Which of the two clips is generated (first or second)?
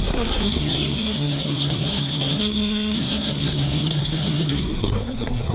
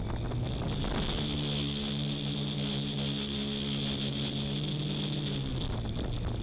first